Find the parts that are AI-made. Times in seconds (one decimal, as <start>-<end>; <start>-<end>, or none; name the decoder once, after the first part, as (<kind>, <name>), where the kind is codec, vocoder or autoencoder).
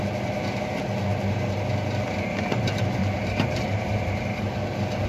3.0-4.1 (vocoder, BigVGAN v2)